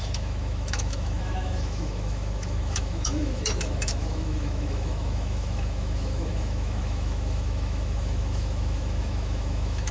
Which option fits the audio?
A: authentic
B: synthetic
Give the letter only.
B